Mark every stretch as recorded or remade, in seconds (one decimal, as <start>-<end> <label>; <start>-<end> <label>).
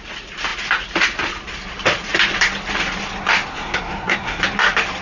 0.0-3.5 recorded; 3.5-4.4 remade; 4.4-5.0 recorded